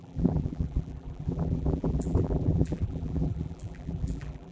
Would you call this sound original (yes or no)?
no